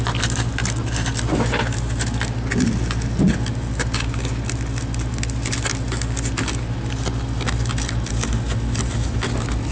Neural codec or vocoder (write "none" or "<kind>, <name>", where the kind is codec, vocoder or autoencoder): none